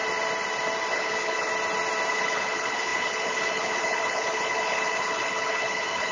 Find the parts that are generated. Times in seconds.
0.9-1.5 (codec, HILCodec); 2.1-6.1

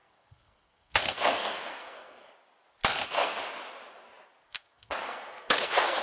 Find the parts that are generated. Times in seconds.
0.0-2.3 (codec, SNAC); 2.9-3.4; 4.4-6.0

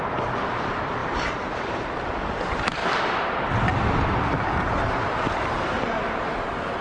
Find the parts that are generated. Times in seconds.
0.0-1.0 (vocoder, BigVGAN v2); 1.5-2.8; 5.3-6.8

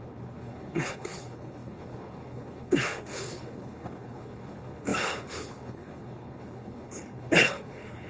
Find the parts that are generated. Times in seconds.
0.0-8.1 (codec, HILCodec)

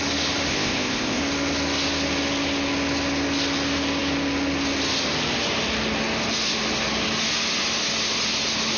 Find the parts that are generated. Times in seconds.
0.5-1.2 (codec, ZipCodec)

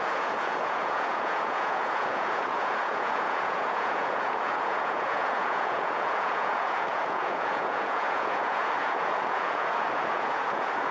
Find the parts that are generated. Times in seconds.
0.0-10.9 (vocoder, Vocos)